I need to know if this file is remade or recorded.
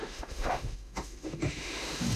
remade